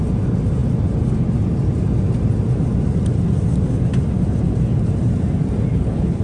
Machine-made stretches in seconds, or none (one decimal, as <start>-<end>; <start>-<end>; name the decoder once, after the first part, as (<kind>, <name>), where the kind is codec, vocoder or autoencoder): 5.7-6.2 (codec, HILCodec)